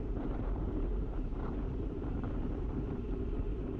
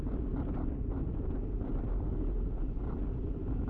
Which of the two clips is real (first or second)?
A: second